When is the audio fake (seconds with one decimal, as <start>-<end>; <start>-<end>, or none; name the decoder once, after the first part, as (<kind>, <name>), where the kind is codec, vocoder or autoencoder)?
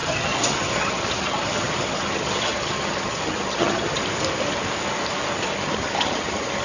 0.0-4.0 (vocoder, HiFi-GAN); 5.5-6.6